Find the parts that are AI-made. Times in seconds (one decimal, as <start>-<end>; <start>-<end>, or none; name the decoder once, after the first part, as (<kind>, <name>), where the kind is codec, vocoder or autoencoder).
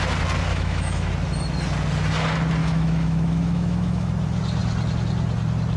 0.5-1.1 (autoencoder, DAC-VAE); 2.6-4.1